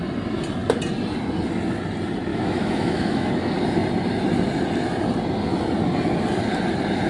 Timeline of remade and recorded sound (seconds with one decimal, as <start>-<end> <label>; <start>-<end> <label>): 0.0-2.3 recorded; 2.3-3.3 remade; 3.3-7.1 recorded